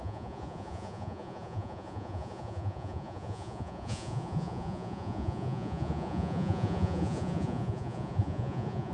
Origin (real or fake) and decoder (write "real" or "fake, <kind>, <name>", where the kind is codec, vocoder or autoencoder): fake, vocoder, Vocos